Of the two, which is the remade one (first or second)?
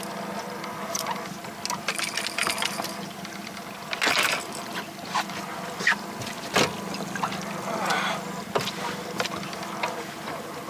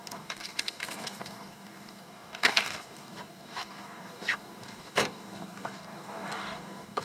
second